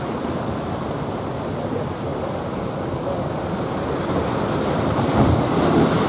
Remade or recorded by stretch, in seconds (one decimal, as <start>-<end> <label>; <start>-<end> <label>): 0.0-2.1 remade; 2.1-4.7 recorded; 4.7-6.1 remade